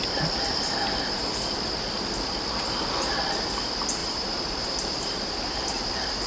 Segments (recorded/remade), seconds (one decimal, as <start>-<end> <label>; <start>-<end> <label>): 0.0-4.0 recorded; 4.0-5.6 remade; 5.6-6.3 recorded